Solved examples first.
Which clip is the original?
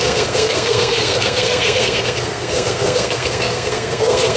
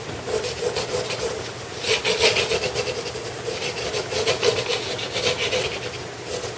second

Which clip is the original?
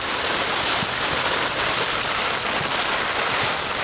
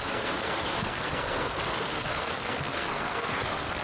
first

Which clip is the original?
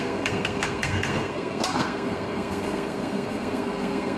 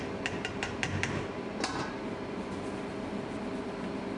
second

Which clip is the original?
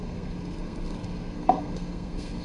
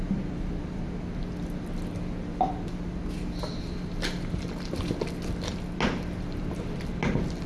second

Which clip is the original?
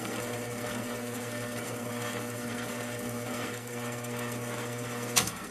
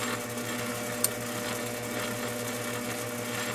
second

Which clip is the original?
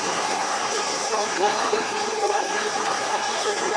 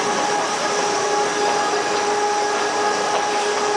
second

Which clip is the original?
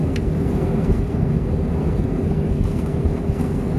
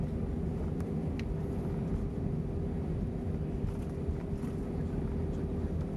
second